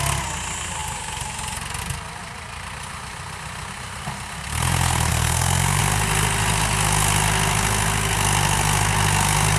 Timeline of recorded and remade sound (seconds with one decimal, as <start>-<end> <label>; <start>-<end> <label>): 0.0-5.1 recorded; 5.1-5.8 remade; 5.8-9.6 recorded

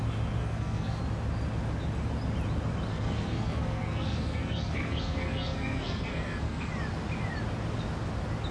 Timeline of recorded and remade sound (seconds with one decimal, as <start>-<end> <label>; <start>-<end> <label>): 0.0-0.4 recorded; 0.4-1.0 remade; 1.0-2.9 recorded; 2.9-6.7 remade; 6.7-8.5 recorded

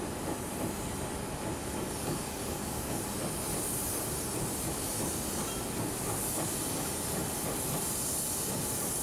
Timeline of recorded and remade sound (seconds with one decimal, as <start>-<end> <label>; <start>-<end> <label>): 0.0-1.6 recorded; 1.6-3.0 remade; 3.0-9.0 recorded

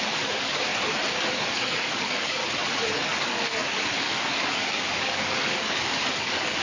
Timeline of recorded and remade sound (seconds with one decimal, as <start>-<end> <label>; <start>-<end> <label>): 0.0-0.7 remade; 0.7-1.3 recorded; 1.3-2.4 remade; 2.4-3.0 recorded; 3.0-6.6 remade

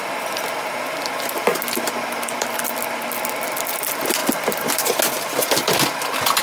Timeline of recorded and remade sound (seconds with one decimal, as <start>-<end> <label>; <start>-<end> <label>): 0.0-6.4 recorded

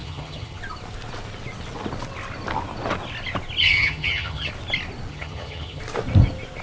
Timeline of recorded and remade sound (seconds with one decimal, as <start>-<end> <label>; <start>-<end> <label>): 0.0-0.6 remade; 0.6-3.6 recorded; 3.6-4.5 remade; 4.5-5.1 recorded; 5.1-5.8 remade; 5.8-6.6 recorded